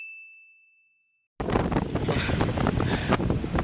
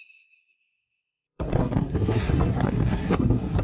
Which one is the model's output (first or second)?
second